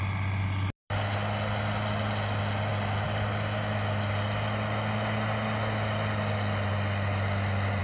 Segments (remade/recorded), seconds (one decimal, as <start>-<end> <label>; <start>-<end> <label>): 0.0-7.8 recorded